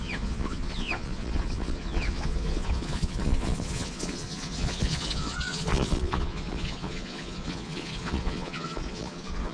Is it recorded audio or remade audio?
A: remade